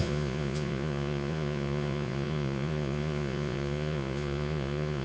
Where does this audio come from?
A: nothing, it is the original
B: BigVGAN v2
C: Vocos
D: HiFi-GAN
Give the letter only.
C